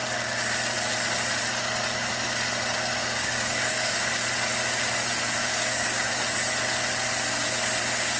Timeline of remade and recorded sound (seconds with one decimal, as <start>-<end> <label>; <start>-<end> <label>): 0.0-3.0 recorded; 3.0-4.1 remade; 4.1-5.4 recorded; 5.4-6.1 remade; 6.1-8.2 recorded